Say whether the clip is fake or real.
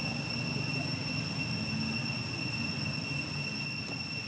real